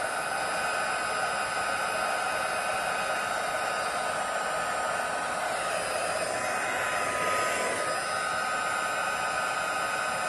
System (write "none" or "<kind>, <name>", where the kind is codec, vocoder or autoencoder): none